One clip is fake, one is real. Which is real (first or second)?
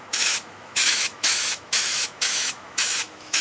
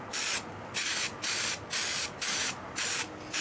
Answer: second